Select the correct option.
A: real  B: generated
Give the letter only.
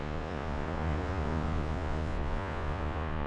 B